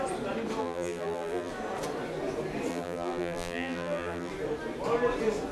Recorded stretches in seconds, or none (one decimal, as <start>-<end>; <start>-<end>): 0.0-0.6; 1.5-2.7; 4.3-5.5